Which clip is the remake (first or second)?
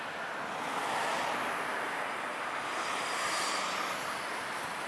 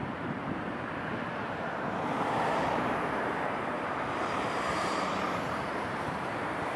second